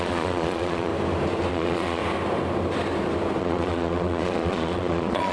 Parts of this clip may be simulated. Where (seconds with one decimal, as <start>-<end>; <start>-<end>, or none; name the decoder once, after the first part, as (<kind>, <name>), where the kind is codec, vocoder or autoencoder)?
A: 0.0-0.9 (vocoder, Vocos); 1.5-2.0; 3.4-5.3